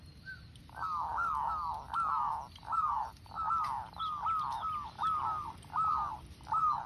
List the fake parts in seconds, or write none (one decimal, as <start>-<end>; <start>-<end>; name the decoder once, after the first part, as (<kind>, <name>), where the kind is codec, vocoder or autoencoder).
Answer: none